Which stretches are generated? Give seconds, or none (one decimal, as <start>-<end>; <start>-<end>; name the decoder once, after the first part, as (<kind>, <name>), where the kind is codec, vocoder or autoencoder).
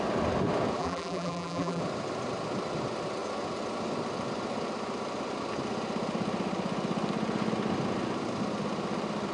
0.8-1.8 (vocoder, BigVGAN v2)